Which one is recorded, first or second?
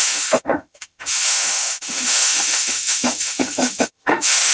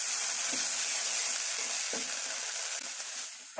second